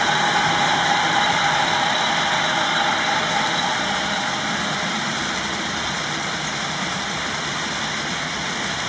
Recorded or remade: remade